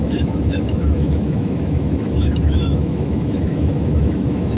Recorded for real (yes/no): no